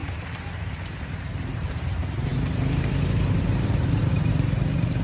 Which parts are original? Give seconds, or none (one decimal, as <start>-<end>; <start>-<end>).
none